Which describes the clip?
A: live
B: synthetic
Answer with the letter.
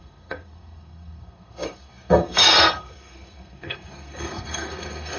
B